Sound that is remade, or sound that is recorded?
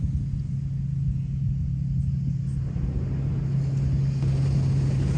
recorded